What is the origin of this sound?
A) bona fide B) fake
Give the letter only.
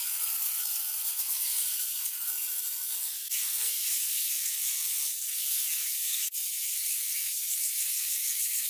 B